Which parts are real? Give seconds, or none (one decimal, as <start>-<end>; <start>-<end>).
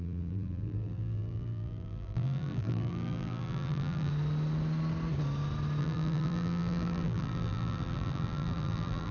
4.1-5.8